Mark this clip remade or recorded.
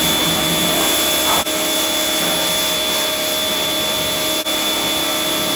recorded